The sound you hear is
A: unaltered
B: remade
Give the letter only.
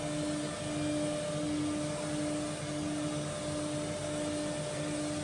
A